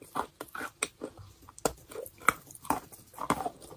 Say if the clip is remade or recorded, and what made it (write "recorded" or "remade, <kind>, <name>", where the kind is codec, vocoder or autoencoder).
recorded